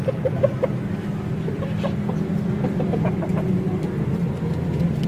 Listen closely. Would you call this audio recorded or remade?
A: recorded